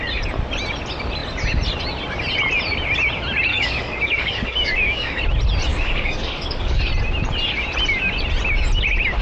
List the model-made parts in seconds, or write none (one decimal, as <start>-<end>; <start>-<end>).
3.5-5.2; 5.7-6.8